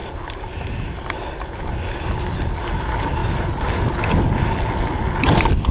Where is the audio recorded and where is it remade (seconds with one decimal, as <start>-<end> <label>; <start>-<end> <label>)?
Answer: 0.0-5.7 recorded

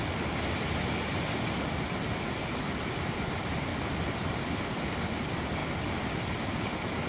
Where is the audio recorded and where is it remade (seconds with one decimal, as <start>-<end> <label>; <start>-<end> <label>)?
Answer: 0.0-7.1 recorded

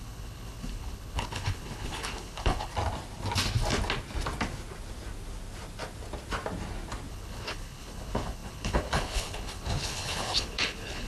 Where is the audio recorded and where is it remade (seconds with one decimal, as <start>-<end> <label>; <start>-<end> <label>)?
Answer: 0.0-2.7 remade; 2.7-7.1 recorded; 7.1-11.1 remade

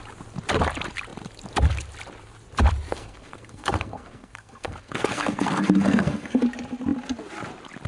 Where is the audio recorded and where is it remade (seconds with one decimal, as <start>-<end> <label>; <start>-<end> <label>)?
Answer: 0.0-2.9 recorded; 2.9-6.4 remade; 6.4-7.9 recorded

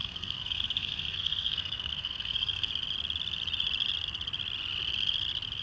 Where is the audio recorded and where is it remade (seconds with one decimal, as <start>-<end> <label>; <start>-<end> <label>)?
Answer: 0.0-2.7 remade; 2.7-5.6 recorded

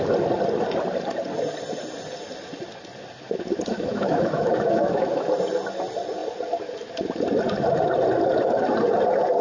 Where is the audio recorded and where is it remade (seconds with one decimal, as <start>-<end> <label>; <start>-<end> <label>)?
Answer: 0.0-3.7 recorded; 3.7-5.3 remade; 5.3-9.4 recorded

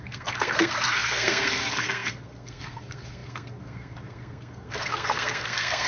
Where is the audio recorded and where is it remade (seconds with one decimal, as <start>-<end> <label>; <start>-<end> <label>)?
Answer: 0.0-5.9 remade

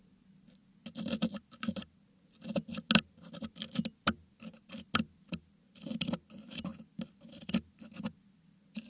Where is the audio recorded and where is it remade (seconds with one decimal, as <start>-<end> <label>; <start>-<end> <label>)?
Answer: 0.0-8.9 recorded